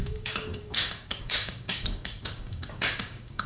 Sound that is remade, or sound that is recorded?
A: remade